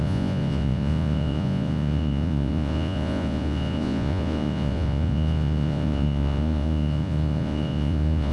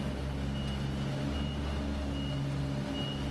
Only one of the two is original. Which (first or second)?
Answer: second